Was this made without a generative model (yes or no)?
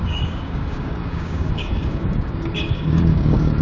no